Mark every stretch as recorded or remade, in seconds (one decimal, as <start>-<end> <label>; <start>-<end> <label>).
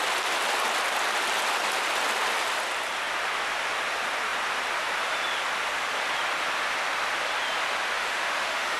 0.0-8.0 recorded; 8.0-8.8 remade